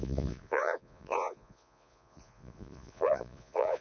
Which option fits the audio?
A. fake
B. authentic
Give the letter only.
A